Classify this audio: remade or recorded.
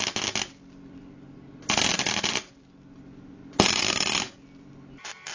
recorded